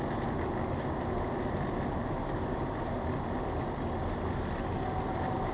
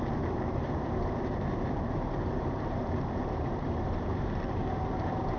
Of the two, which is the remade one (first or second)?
second